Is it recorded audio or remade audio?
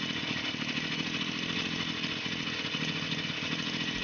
recorded